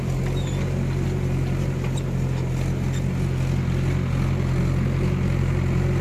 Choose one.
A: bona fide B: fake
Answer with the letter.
A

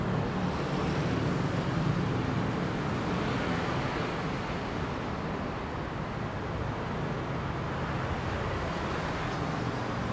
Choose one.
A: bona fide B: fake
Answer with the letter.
A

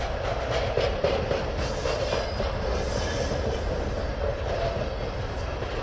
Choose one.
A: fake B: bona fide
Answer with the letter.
B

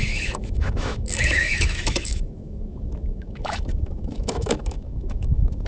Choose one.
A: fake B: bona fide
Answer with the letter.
A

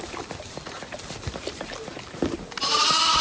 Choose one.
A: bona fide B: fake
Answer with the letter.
A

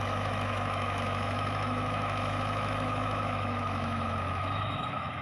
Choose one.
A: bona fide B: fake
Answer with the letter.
B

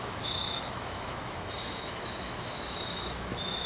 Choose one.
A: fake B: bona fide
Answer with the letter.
A